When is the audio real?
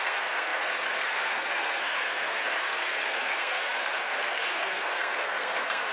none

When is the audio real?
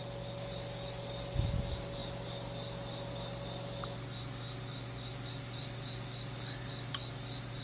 0.0-7.6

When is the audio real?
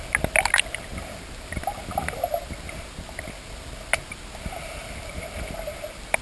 0.0-6.2